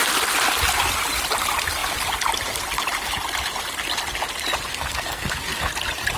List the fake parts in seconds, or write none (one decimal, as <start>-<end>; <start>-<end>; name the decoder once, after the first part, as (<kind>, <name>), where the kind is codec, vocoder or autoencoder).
4.7-5.7 (codec, SNAC)